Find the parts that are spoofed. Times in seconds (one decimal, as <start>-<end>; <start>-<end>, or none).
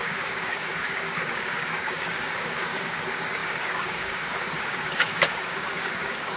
0.0-6.4